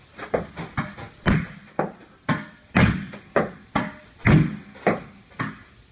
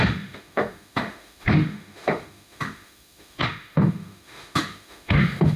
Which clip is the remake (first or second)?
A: second